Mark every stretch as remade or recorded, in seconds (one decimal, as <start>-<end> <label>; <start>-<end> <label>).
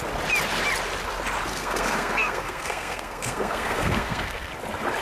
0.0-1.5 recorded; 1.5-4.5 remade; 4.5-5.0 recorded